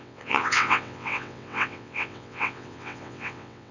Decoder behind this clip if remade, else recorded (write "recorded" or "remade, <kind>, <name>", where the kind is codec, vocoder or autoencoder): remade, vocoder, WaveNeXt